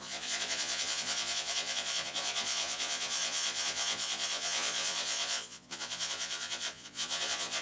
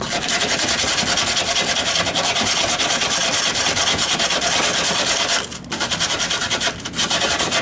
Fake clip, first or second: first